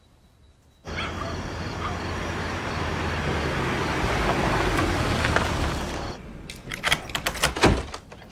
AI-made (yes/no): no